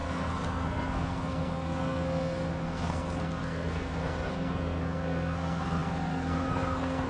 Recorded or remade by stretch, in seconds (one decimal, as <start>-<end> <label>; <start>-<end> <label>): 0.0-7.1 remade